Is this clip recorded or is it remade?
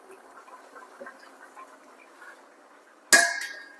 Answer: recorded